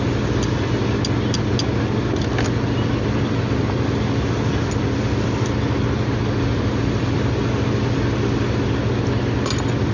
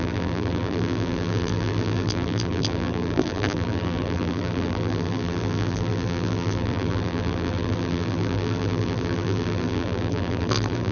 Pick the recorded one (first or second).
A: first